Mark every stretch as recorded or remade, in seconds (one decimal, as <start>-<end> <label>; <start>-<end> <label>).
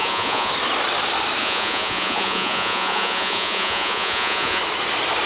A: 0.0-0.5 remade; 0.5-1.4 recorded; 1.4-4.6 remade; 4.6-5.3 recorded